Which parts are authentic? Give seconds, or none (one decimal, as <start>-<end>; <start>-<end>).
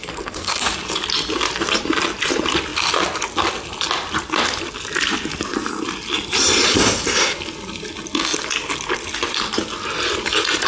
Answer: 0.6-10.7